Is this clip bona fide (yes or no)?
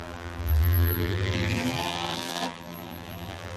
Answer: no